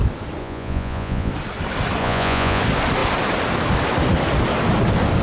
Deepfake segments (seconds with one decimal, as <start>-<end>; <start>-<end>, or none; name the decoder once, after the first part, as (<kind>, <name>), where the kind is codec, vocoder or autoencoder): 0.4-1.3 (vocoder, Vocos); 2.0-2.6